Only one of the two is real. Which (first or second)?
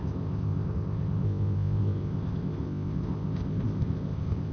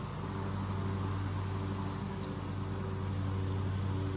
second